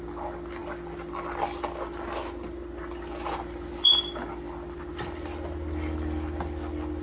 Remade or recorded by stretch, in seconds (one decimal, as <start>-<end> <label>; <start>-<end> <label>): 0.0-7.0 recorded